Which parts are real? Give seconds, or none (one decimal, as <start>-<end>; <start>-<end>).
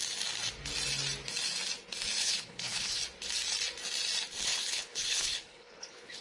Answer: 0.0-2.2; 3.0-4.4